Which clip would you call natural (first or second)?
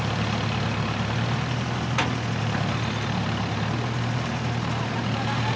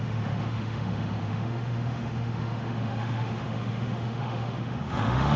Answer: first